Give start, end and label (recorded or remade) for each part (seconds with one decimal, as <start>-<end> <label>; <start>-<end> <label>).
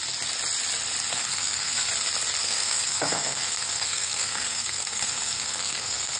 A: 0.0-1.1 recorded; 1.1-1.9 remade; 1.9-2.4 recorded; 2.4-6.2 remade